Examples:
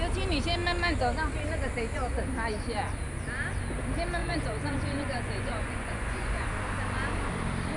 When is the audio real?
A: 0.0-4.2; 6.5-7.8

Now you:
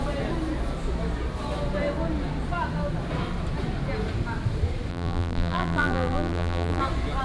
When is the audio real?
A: 0.0-4.9; 6.8-7.2